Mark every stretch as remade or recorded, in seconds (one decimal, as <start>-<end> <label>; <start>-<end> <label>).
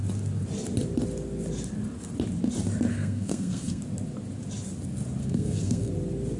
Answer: 0.0-2.9 recorded; 2.9-3.8 remade; 3.8-5.2 recorded; 5.2-5.9 remade; 5.9-6.4 recorded